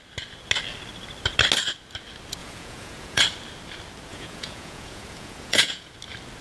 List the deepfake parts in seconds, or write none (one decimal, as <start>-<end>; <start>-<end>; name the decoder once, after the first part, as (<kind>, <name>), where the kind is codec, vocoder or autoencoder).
2.4-3.2 (vocoder, Vocos); 4.1-5.9